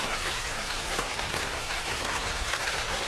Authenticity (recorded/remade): remade